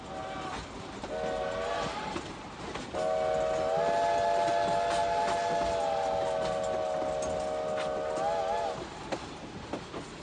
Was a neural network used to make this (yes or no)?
no